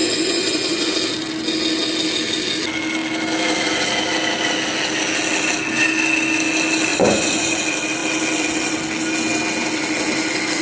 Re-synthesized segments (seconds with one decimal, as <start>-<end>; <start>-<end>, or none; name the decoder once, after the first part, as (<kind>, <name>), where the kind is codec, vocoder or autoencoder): 0.0-0.9 (vocoder, Vocos); 6.9-7.6